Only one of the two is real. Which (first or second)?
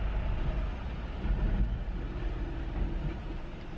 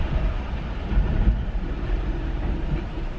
first